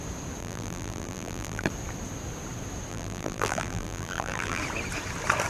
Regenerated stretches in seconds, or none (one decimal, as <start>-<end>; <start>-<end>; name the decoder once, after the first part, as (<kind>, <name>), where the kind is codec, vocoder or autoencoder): 0.4-1.7 (vocoder, BigVGAN v2); 2.9-4.6